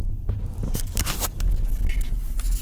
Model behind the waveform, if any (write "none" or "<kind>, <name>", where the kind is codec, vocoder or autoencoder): none